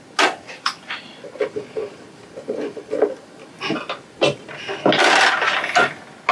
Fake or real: real